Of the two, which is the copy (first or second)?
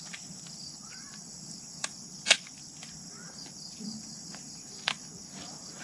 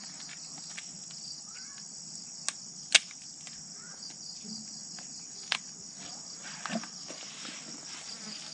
first